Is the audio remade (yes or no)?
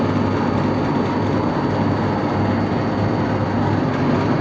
no